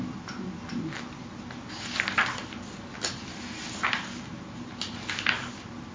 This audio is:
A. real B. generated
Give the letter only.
A